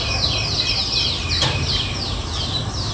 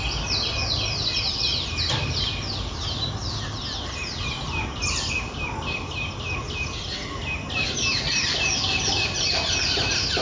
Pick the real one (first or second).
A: second